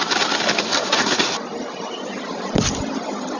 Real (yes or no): no